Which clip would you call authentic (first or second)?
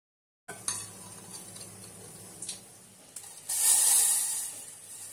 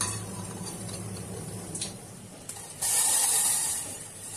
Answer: first